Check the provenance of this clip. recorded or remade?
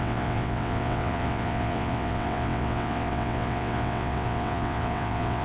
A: remade